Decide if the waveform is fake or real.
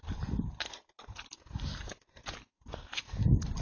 real